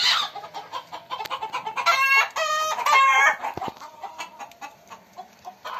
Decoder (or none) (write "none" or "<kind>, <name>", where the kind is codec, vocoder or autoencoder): none